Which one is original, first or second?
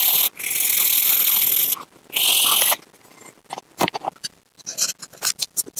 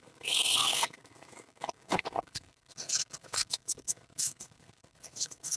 first